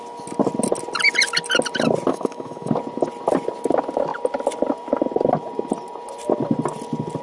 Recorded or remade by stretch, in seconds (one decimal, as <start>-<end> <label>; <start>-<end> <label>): 0.0-2.1 recorded; 2.1-2.7 remade; 2.7-7.2 recorded